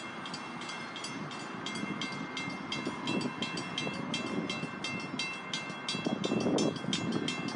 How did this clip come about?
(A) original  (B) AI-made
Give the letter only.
A